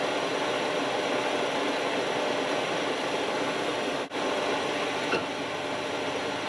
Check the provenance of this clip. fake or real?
real